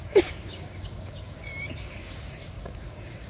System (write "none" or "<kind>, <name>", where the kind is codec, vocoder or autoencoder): codec, DAC